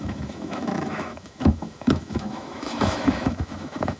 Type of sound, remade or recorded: remade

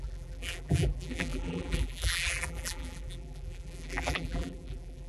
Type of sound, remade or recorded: remade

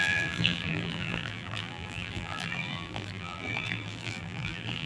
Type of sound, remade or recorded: remade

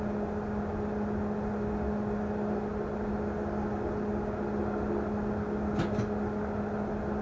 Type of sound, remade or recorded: recorded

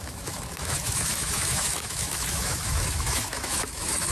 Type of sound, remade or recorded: remade